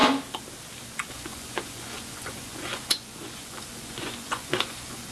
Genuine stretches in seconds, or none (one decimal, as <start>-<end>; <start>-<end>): 0.0-1.1